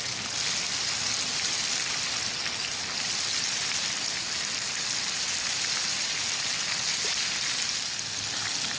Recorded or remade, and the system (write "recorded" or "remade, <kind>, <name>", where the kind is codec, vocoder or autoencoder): recorded